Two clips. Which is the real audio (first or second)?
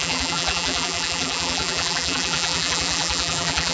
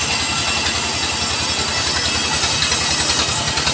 second